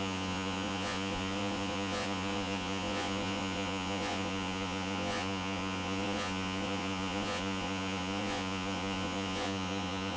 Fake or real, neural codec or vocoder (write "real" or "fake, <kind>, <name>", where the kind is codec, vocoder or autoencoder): fake, vocoder, Vocos